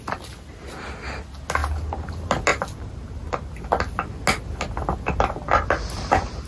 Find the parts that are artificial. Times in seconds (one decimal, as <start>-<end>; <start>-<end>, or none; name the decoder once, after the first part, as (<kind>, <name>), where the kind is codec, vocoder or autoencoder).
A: none